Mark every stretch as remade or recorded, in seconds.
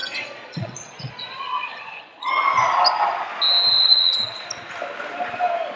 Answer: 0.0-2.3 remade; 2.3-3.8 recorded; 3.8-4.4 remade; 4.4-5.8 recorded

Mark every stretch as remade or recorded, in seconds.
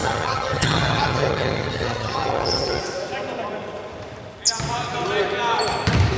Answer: 0.0-2.8 remade; 2.8-6.2 recorded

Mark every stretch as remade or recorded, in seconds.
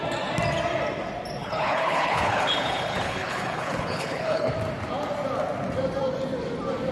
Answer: 0.0-1.4 recorded; 1.4-4.5 remade; 4.5-6.9 recorded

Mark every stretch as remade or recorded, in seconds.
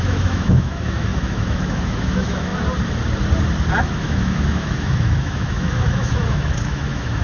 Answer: 0.0-2.5 remade; 2.5-3.8 recorded; 3.8-7.2 remade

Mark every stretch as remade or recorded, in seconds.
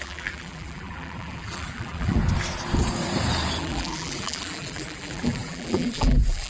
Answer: 0.0-2.2 remade; 2.2-3.6 recorded; 3.6-6.5 remade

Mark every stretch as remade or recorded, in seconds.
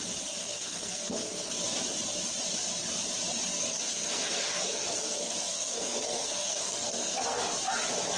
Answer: 0.0-0.4 recorded; 0.4-1.5 remade; 1.5-3.7 recorded; 3.7-7.4 remade; 7.4-8.2 recorded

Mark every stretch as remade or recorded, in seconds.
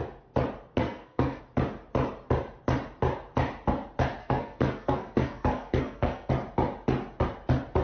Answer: 0.0-0.8 recorded; 0.8-1.4 remade; 1.4-4.2 recorded; 4.2-6.3 remade; 6.3-7.8 recorded